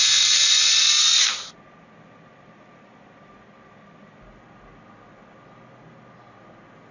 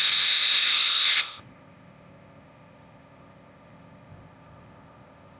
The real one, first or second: first